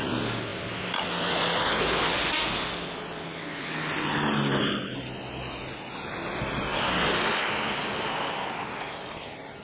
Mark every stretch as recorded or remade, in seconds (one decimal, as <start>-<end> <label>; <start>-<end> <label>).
0.0-9.6 recorded